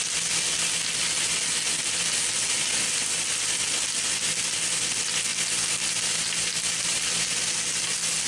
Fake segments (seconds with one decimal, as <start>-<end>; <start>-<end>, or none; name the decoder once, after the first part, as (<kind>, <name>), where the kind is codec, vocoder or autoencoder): none